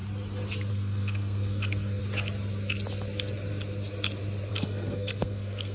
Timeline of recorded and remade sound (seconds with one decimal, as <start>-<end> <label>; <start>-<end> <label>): 0.0-0.7 recorded; 0.7-2.0 remade; 2.0-4.5 recorded; 4.5-5.7 remade